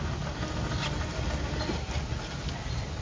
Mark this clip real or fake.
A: real